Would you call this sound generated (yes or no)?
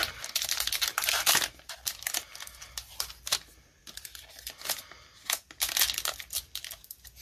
no